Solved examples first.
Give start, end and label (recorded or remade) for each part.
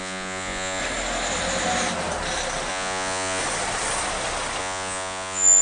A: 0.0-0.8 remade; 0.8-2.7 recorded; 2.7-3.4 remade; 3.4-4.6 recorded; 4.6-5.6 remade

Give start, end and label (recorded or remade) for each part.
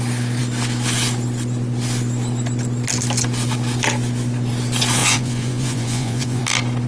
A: 0.0-5.0 recorded; 5.0-6.4 remade; 6.4-6.9 recorded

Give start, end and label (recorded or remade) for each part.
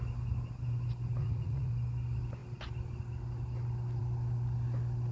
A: 0.0-1.2 recorded; 1.2-1.7 remade; 1.7-5.1 recorded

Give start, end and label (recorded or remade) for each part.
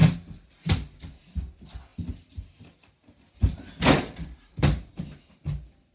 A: 0.0-5.9 recorded